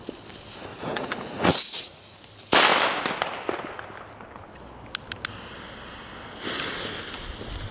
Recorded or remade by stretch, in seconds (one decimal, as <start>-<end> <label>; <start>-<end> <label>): 0.0-0.7 recorded; 0.7-2.3 remade; 2.3-7.7 recorded